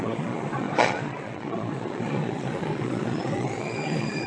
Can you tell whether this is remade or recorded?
remade